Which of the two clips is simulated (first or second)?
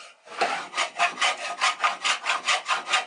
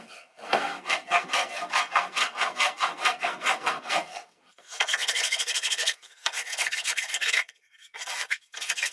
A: second